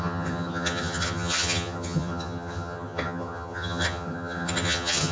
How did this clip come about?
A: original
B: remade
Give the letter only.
B